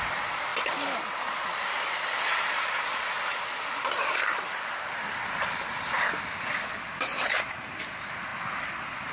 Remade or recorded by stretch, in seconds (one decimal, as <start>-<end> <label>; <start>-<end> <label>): 0.0-9.1 remade